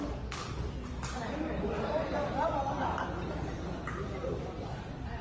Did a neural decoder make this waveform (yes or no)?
no